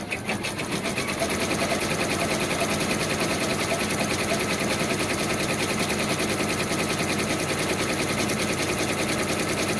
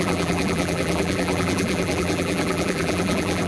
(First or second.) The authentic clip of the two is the first